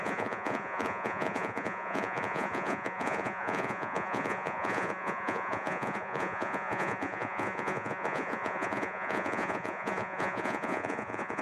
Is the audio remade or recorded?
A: remade